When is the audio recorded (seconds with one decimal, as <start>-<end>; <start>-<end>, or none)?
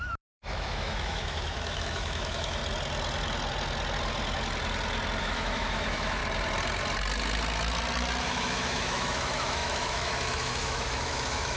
2.6-5.2; 6.2-8.2